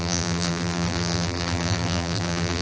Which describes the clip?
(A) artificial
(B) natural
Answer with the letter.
A